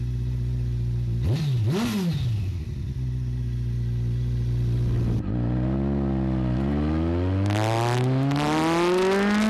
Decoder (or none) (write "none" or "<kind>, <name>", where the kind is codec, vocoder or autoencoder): none